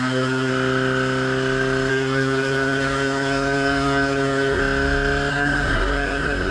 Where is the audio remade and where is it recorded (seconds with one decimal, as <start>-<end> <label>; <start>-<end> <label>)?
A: 0.0-0.5 remade; 0.5-1.9 recorded; 1.9-4.6 remade; 4.6-5.3 recorded; 5.3-6.5 remade